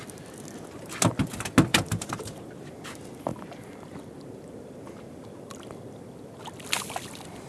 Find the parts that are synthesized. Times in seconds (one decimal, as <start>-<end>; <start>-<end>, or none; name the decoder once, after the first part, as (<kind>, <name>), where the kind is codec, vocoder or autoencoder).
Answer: 1.7-2.5 (vocoder, BigVGAN v2)